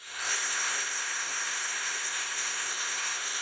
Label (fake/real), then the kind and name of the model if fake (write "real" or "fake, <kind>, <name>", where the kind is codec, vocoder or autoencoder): fake, codec, SNAC